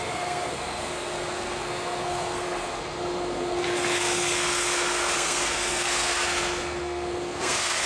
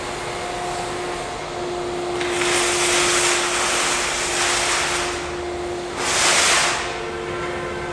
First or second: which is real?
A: second